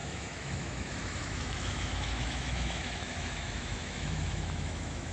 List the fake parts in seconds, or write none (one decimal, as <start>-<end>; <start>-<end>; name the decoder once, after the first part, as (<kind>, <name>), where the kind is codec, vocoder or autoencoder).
0.0-5.1 (autoencoder, DAC-VAE)